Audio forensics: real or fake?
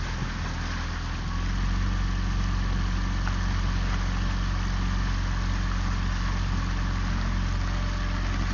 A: real